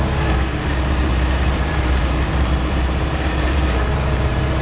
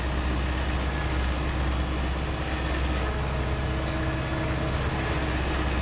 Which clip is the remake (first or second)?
first